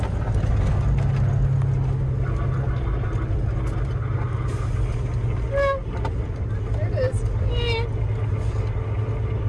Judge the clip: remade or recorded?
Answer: recorded